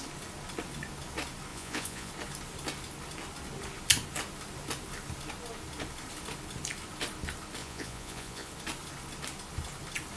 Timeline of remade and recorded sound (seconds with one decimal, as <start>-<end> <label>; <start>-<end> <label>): 0.0-1.5 recorded; 1.5-2.1 remade; 2.1-7.6 recorded; 7.6-8.5 remade; 8.5-10.2 recorded